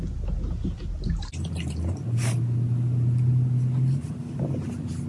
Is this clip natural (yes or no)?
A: yes